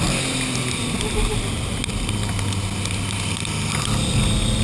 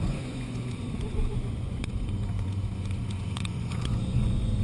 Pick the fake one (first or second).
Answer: second